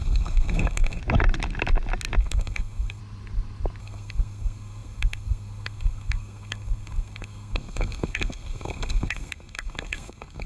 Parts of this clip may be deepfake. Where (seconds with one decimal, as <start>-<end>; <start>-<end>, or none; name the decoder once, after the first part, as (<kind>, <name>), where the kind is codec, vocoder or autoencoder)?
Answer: 0.0-1.0 (codec, SNAC); 2.2-3.0; 3.8-10.5